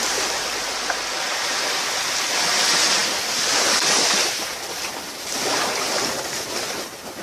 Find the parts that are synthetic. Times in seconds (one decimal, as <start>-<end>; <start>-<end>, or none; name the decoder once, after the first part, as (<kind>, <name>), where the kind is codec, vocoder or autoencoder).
3.0-5.3 (vocoder, BigVGAN v2)

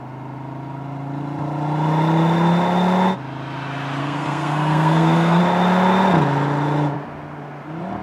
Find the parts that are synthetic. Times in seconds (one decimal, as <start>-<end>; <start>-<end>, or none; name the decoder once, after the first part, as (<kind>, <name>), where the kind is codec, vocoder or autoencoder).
4.0-5.4 (codec, SNAC)

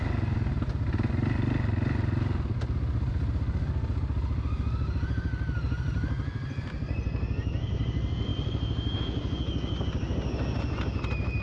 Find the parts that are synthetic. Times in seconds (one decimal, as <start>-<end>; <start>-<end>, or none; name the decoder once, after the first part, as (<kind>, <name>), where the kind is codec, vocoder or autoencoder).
none

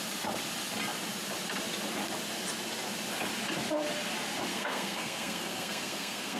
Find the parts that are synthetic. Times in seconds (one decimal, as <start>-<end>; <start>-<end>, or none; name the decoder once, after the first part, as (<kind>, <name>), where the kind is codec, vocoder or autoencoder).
4.5-6.4 (codec, SNAC)

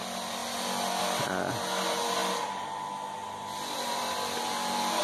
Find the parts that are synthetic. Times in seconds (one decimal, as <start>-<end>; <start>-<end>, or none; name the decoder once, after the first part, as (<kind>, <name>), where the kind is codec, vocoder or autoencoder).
none

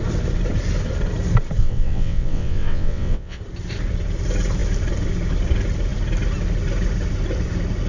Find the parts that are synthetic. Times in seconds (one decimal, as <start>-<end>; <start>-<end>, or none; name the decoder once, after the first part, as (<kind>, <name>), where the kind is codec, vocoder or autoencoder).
1.6-3.4 (vocoder, WaveNeXt)

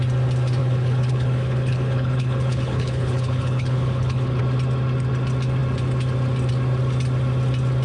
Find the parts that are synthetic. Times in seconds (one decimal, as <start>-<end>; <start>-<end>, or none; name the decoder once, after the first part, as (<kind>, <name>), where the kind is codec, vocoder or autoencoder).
0.6-4.4 (codec, HILCodec)